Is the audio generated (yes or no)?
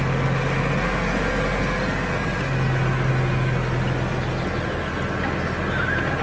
no